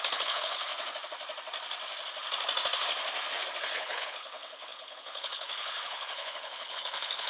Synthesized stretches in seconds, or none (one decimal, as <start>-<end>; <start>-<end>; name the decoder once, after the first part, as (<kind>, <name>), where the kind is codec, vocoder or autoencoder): 0.0-0.7 (codec, HILCodec); 3.6-7.3